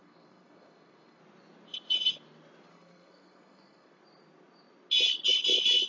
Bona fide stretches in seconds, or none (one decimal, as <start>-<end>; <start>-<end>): 1.2-2.7; 4.0-5.9